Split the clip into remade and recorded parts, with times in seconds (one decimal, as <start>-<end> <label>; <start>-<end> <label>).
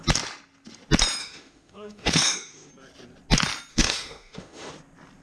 0.0-1.2 recorded; 1.2-2.7 remade; 2.7-3.7 recorded; 3.7-4.7 remade; 4.7-5.2 recorded